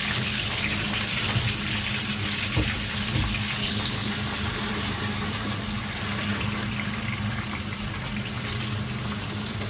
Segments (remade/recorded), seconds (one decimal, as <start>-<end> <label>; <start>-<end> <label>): 0.0-0.6 remade; 0.6-3.6 recorded; 3.6-4.1 remade; 4.1-9.7 recorded